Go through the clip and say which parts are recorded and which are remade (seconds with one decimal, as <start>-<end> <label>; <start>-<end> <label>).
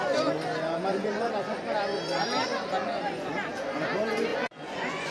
0.0-0.9 recorded; 0.9-1.6 remade; 1.6-2.8 recorded; 2.8-3.5 remade; 3.5-4.3 recorded; 4.3-5.1 remade